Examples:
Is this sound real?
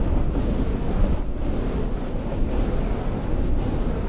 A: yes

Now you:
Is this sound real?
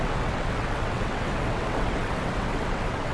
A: no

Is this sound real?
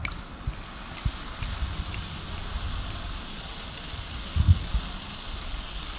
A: yes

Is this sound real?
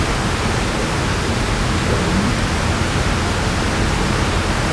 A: yes